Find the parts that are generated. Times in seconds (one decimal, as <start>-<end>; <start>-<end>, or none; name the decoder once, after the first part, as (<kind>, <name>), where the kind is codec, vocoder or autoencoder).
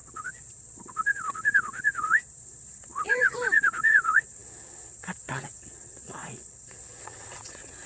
0.0-7.9 (vocoder, WaveNeXt)